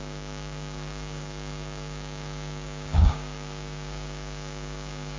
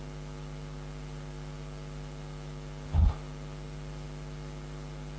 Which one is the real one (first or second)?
second